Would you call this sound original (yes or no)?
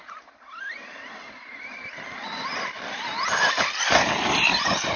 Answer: yes